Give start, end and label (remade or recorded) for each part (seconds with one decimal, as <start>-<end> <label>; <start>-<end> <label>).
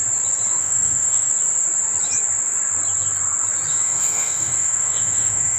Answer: 0.0-0.6 recorded; 0.6-1.3 remade; 1.3-3.7 recorded; 3.7-5.6 remade